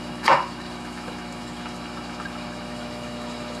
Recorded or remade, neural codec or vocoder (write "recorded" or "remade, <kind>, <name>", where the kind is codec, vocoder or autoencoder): remade, autoencoder, DAC-VAE